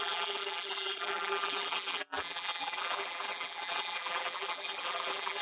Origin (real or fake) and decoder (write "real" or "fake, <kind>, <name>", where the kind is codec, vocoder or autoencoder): fake, vocoder, BigVGAN v2